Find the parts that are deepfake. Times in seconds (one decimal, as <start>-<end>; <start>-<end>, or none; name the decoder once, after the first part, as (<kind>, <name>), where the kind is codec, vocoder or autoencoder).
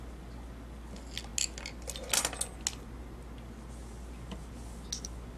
none